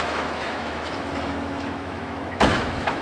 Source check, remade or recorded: remade